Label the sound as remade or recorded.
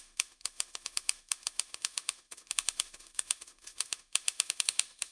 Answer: remade